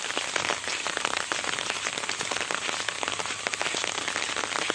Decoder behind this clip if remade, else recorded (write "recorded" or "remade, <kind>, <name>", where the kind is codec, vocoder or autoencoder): recorded